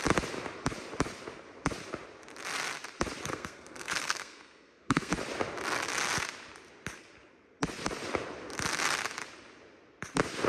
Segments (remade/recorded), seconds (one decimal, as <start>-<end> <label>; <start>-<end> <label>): 0.0-3.3 recorded; 3.3-5.1 remade; 5.1-10.5 recorded